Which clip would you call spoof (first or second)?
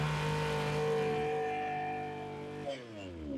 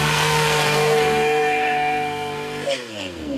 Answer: second